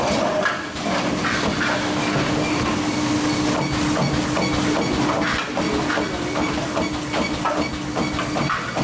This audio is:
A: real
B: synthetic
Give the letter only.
A